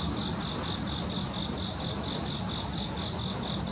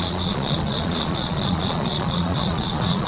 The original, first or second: first